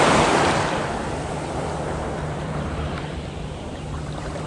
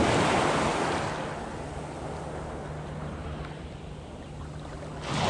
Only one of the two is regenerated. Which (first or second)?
first